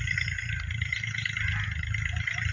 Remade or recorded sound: recorded